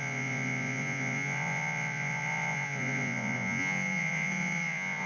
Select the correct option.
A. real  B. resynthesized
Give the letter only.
B